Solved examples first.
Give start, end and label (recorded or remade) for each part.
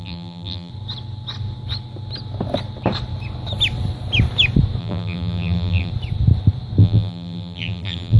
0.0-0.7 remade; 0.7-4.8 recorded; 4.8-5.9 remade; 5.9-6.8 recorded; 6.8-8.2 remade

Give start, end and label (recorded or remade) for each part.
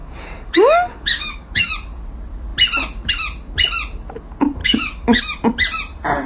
0.0-1.7 remade; 1.7-4.6 recorded; 4.6-5.2 remade; 5.2-6.3 recorded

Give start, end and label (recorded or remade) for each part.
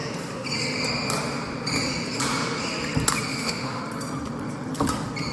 0.0-3.3 recorded; 3.3-3.8 remade; 3.8-5.3 recorded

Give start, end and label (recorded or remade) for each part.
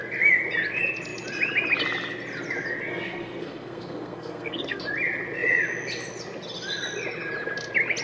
0.0-2.9 recorded; 2.9-4.8 remade; 4.8-8.0 recorded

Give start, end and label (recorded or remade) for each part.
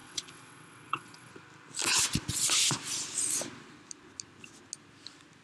0.0-1.3 remade; 1.3-5.4 recorded